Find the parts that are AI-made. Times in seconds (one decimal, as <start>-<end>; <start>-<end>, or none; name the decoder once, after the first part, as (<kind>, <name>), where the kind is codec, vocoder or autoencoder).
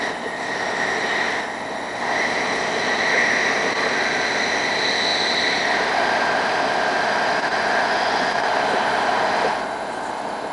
7.5-8.5 (vocoder, Vocos)